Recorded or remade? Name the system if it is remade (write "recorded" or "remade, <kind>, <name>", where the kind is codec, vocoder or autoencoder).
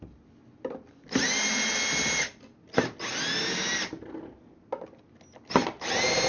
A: recorded